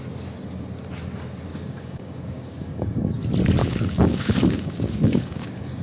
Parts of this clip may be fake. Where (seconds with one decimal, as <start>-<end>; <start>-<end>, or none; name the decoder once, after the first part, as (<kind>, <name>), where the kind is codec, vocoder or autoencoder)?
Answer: 1.5-3.2 (codec, DAC); 3.6-5.8